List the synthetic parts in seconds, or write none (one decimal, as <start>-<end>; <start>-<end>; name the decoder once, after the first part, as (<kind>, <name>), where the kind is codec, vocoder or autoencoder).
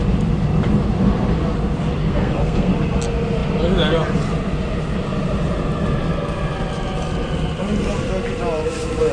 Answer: 2.0-2.7 (codec, SNAC)